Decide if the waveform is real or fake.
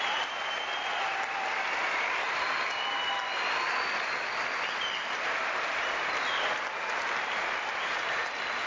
real